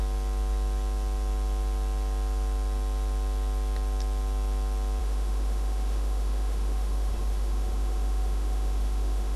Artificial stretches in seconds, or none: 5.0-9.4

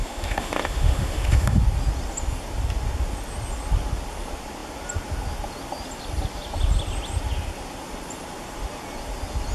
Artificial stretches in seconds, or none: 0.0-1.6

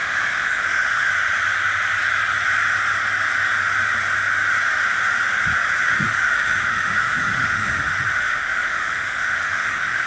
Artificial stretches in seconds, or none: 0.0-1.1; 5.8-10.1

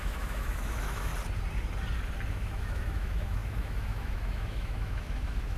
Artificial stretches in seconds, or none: 0.0-1.1; 2.3-5.6

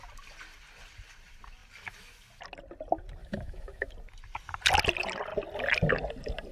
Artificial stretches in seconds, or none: 3.2-3.9

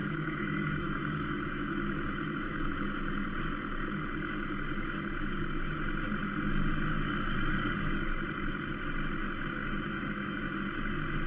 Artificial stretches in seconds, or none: 0.0-2.7; 9.6-10.5

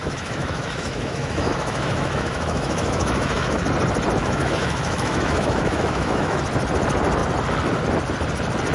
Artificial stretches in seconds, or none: 0.0-3.6; 4.2-6.4